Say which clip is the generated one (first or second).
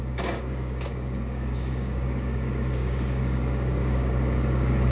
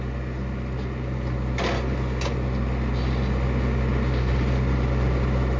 first